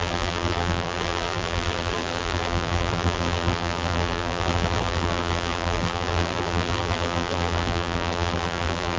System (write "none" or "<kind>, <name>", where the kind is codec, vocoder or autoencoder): vocoder, BigVGAN v2